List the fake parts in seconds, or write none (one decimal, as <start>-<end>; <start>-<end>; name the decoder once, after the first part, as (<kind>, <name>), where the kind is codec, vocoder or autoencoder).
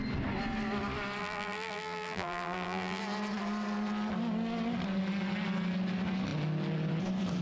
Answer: 1.2-3.0 (vocoder, BigVGAN v2)